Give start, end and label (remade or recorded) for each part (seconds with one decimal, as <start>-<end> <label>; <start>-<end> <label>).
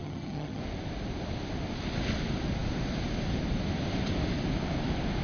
0.0-0.6 remade; 0.6-5.2 recorded